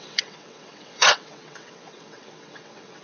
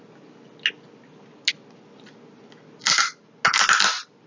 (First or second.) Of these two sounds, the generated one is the first